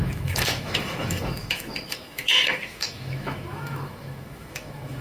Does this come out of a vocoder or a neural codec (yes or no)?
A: yes